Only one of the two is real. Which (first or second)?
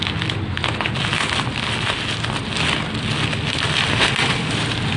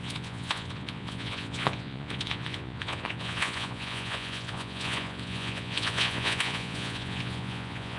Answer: first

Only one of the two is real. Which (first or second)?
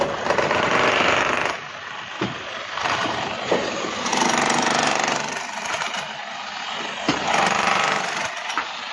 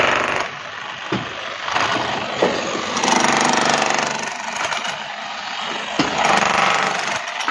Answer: second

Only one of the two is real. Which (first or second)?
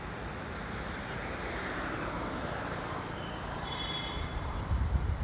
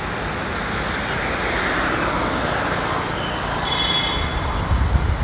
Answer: second